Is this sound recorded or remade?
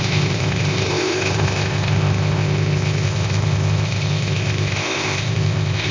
remade